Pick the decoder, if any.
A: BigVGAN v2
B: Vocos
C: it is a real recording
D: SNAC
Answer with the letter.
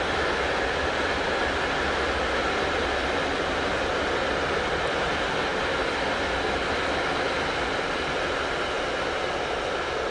C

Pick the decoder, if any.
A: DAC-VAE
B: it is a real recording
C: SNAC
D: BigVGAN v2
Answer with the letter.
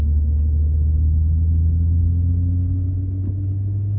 B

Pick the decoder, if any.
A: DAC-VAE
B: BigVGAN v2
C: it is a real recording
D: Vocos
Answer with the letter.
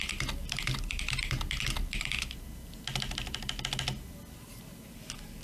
C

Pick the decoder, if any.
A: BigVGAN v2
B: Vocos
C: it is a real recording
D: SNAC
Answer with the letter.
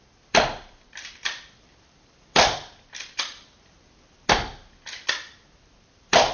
A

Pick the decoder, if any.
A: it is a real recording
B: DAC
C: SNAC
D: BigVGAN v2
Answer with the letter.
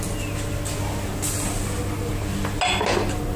A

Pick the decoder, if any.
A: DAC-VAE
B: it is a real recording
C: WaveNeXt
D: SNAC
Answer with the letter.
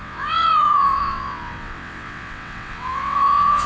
C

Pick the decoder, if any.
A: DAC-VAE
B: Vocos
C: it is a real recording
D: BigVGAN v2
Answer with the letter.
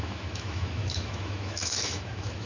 A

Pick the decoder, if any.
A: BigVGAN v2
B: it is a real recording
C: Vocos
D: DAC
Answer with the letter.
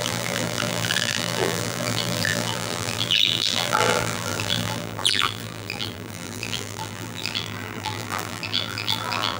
A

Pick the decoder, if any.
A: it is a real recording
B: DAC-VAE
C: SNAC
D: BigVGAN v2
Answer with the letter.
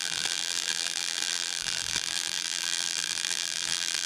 D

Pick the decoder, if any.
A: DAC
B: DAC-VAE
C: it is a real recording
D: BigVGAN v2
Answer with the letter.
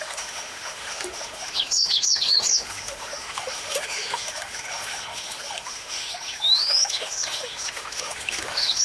B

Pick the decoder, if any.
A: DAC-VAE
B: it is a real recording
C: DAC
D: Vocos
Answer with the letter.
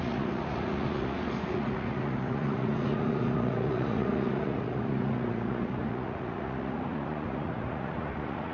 D